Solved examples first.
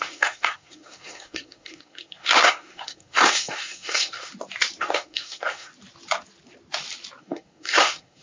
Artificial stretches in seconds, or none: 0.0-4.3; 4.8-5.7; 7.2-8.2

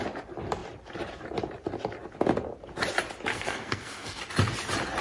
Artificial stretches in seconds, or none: 3.3-4.2

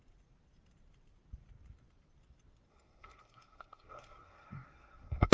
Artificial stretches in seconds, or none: 2.7-5.3

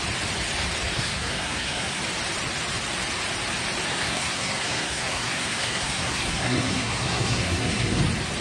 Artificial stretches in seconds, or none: 0.9-2.0; 3.9-8.0

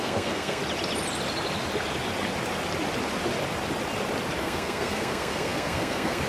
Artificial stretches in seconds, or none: 0.0-0.6; 4.4-6.3

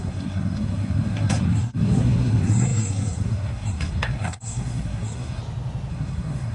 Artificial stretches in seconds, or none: 0.0-5.4; 5.9-6.5

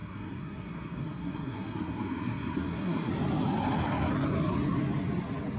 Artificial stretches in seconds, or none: 0.0-3.1